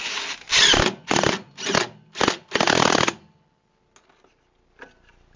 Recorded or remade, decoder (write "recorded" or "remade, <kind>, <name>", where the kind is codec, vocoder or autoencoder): recorded